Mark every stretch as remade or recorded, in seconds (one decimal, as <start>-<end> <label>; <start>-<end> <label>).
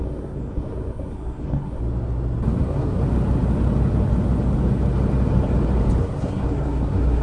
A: 0.0-1.8 remade; 1.8-2.6 recorded; 2.6-3.0 remade; 3.0-6.0 recorded; 6.0-7.2 remade